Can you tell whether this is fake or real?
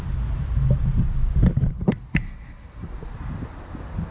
real